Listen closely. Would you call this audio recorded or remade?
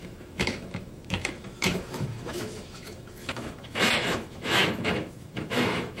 remade